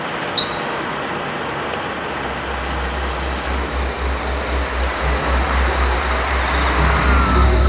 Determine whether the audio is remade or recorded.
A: recorded